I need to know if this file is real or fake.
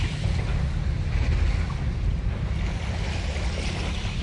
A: real